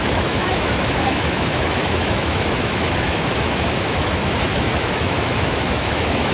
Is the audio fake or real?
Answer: fake